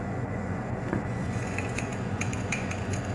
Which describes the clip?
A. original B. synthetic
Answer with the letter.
B